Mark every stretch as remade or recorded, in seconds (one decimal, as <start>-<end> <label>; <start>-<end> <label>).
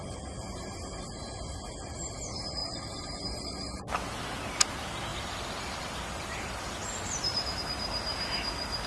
0.0-5.1 recorded; 5.1-7.6 remade; 7.6-8.9 recorded